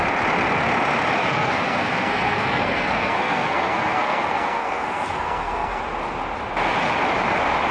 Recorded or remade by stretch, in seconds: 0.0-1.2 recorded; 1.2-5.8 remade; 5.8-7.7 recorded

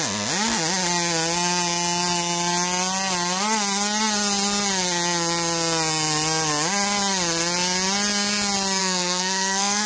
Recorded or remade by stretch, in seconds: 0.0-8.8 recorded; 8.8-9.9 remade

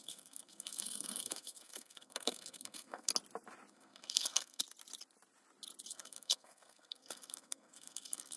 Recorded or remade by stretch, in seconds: 0.0-3.1 remade; 3.1-3.7 recorded; 3.7-4.6 remade; 4.6-5.9 recorded; 5.9-8.4 remade

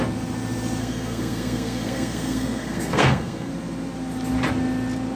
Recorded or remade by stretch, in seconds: 0.0-0.8 recorded; 0.8-3.5 remade; 3.5-5.2 recorded

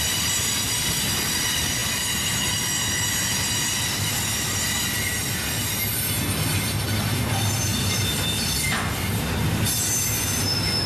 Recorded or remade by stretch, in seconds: 0.0-10.9 recorded